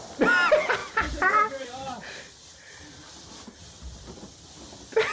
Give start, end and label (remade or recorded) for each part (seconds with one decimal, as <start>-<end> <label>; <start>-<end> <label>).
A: 0.0-0.8 recorded; 0.8-3.1 remade; 3.1-5.1 recorded